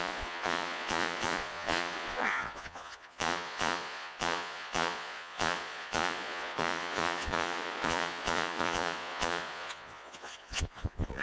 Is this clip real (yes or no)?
no